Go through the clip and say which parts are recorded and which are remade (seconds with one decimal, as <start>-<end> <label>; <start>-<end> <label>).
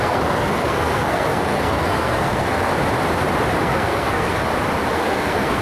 0.0-2.7 remade; 2.7-3.6 recorded; 3.6-4.4 remade; 4.4-4.9 recorded; 4.9-5.6 remade